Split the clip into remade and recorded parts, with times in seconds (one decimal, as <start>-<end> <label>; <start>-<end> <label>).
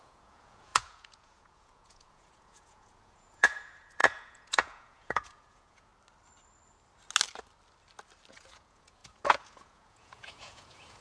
0.0-5.9 remade; 5.9-8.3 recorded; 8.3-11.0 remade